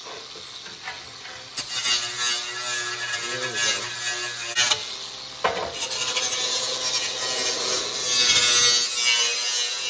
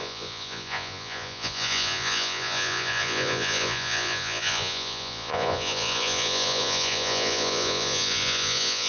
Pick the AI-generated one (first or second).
second